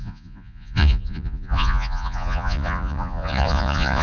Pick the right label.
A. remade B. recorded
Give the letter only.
A